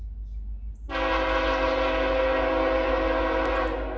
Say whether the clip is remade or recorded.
recorded